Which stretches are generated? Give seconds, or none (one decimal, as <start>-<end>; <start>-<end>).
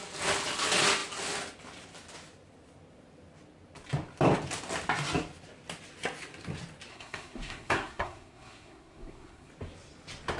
6.9-9.5